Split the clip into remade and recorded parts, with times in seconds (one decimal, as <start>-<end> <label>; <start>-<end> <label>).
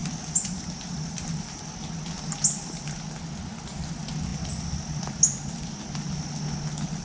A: 0.0-1.6 remade; 1.6-7.0 recorded